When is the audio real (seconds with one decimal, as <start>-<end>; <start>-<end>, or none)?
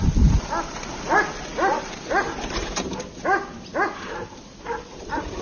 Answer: 0.0-5.4